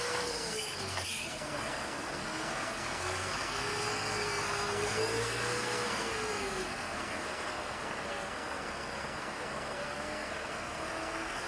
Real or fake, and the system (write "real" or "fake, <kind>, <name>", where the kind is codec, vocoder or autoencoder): fake, codec, SNAC